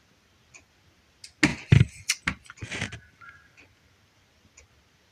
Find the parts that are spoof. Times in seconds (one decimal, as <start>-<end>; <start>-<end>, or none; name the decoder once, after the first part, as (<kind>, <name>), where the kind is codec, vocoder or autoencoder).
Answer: none